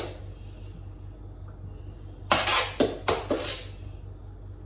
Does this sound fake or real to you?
real